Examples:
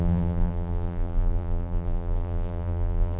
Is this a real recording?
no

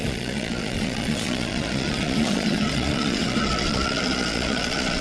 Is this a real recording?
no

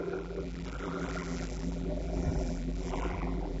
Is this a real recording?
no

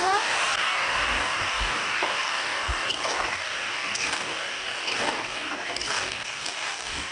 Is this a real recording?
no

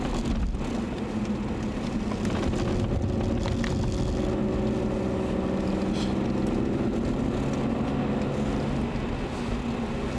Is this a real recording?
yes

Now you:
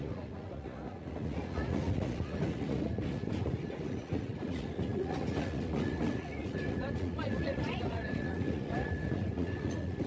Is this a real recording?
no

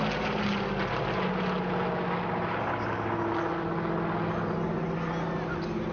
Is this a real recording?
yes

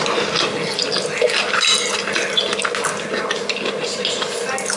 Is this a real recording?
yes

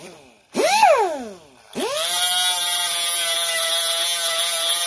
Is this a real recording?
yes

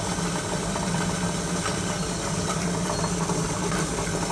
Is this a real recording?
yes